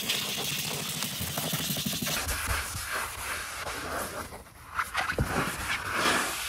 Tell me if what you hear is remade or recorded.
recorded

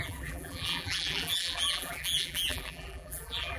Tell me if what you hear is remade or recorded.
remade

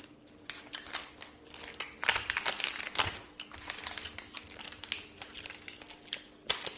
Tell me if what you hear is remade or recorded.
recorded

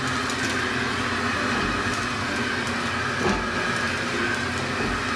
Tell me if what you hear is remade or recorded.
recorded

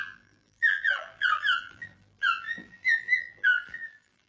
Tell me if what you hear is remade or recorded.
remade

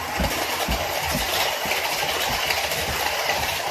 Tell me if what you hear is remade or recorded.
recorded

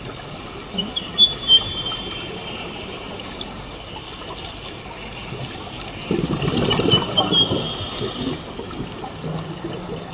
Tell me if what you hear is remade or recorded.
recorded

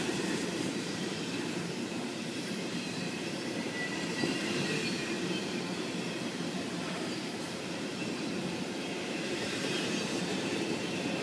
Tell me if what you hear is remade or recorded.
remade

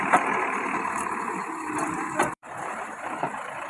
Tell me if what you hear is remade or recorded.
remade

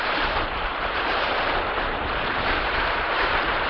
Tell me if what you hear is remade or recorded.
remade